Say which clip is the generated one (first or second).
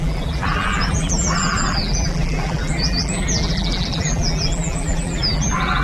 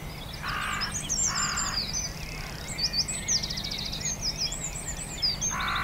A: first